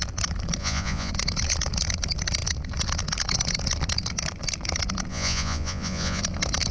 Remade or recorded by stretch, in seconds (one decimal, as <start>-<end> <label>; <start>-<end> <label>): 0.0-0.6 recorded; 0.6-1.1 remade; 1.1-5.1 recorded; 5.1-6.2 remade; 6.2-6.7 recorded